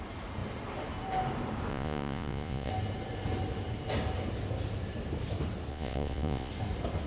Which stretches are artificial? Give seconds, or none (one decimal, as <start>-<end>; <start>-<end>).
1.7-2.7; 5.7-6.5